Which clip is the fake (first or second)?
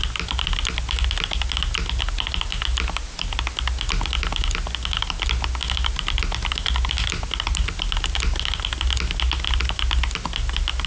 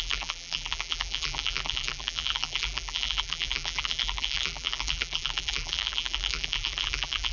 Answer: second